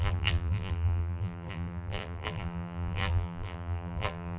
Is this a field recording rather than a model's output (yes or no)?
no